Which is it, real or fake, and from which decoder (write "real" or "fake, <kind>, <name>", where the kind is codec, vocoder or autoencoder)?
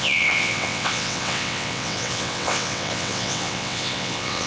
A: fake, vocoder, WaveNeXt